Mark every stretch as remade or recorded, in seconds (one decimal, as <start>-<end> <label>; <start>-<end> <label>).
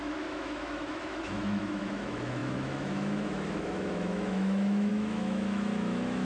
0.0-6.2 remade